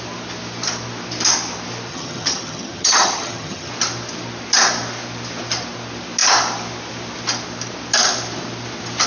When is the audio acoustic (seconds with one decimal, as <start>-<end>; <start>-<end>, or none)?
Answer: 0.0-1.9; 3.7-9.1